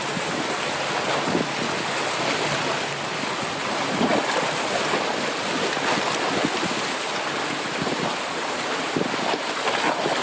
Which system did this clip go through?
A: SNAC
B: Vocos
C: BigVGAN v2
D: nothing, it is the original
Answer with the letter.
D